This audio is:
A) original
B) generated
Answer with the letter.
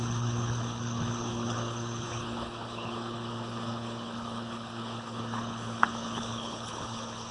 B